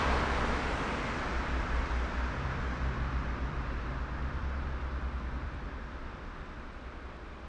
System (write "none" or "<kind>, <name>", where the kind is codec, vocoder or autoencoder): vocoder, BigVGAN v2